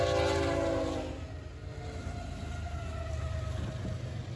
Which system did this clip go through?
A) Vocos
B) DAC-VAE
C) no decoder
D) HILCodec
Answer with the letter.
C